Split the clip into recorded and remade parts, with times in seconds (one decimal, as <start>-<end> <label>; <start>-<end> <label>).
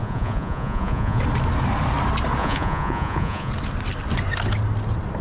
0.0-1.2 remade; 1.2-2.4 recorded; 2.4-3.5 remade; 3.5-5.2 recorded